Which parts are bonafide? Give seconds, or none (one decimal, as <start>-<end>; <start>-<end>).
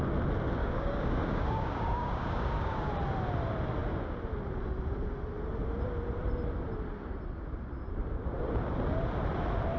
0.0-0.6; 2.9-9.8